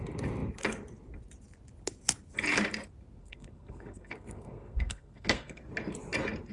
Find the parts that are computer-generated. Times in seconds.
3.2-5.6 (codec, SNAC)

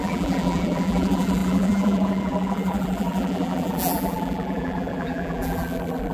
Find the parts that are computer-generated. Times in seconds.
0.0-6.1 (vocoder, BigVGAN v2)

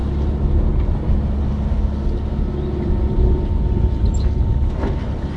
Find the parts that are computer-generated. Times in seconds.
none

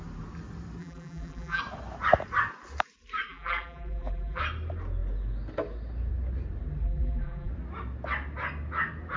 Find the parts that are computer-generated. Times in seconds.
0.8-1.6 (vocoder, BigVGAN v2); 3.3-4.4; 6.8-7.5

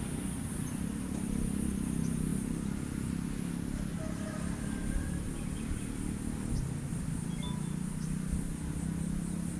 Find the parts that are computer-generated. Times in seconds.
none